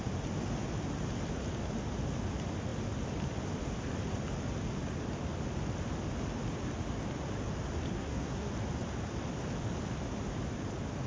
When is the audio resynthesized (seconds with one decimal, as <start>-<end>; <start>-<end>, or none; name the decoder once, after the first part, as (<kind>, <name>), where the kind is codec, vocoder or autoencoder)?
7.9-8.5 (codec, SNAC)